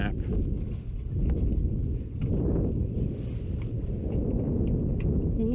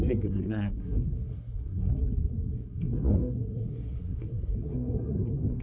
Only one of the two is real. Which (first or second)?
first